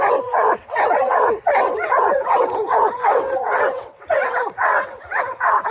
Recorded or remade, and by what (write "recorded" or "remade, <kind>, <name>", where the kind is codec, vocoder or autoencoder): remade, vocoder, WaveNeXt